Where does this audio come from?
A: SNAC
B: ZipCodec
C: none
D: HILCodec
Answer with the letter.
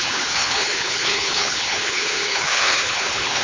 D